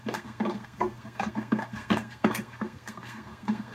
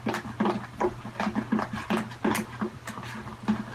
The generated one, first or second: first